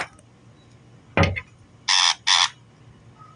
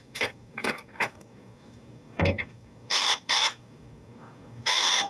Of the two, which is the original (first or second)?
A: first